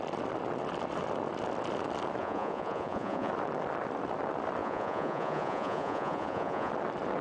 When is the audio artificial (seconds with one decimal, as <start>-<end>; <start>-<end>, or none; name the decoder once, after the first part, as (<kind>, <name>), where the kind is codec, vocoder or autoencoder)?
2.2-3.3 (vocoder, Vocos); 4.6-6.7